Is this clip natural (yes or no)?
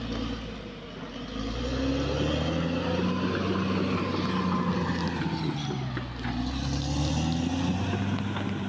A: yes